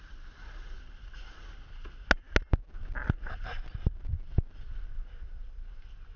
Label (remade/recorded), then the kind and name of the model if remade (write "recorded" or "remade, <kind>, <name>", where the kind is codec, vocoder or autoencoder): recorded